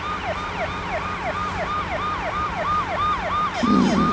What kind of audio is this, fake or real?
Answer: real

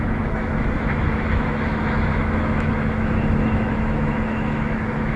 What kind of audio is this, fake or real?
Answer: fake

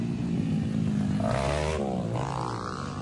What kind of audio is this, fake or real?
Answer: real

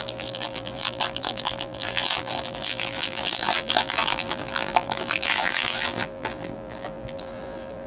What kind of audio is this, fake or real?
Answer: fake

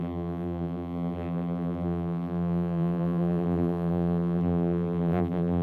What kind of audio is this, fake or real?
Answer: fake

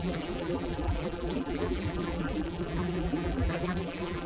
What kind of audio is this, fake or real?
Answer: fake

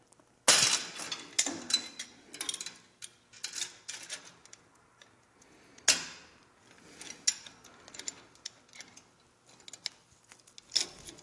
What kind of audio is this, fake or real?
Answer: real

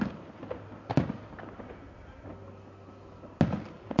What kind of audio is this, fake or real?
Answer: real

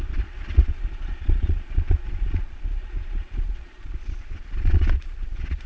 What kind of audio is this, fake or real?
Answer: fake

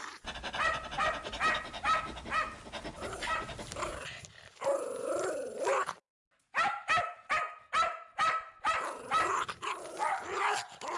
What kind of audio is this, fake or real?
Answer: real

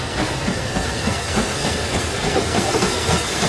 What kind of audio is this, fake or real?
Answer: fake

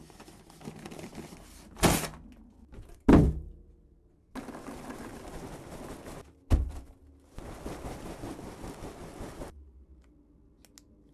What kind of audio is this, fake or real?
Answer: real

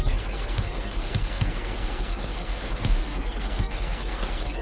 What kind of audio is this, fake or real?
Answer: fake